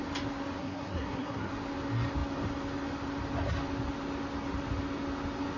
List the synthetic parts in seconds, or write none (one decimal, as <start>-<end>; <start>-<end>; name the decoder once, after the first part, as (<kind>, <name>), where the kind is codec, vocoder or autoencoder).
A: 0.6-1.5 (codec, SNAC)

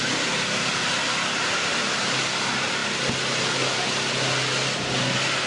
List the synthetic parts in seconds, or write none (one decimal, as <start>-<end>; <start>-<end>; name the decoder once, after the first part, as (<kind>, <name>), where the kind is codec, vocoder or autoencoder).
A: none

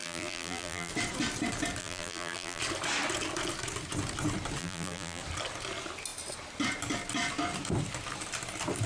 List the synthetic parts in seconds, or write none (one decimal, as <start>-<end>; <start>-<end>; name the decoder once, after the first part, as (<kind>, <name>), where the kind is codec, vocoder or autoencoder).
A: 0.0-0.9 (vocoder, BigVGAN v2); 1.8-2.6; 4.6-5.2